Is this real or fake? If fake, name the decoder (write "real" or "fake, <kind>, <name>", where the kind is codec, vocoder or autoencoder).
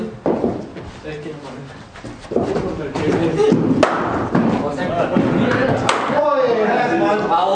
real